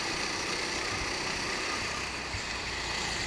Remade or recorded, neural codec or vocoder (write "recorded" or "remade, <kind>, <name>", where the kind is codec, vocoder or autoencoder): recorded